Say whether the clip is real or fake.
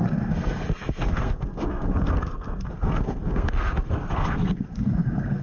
fake